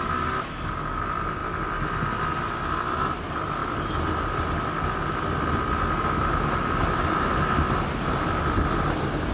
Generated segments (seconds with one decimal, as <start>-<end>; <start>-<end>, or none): none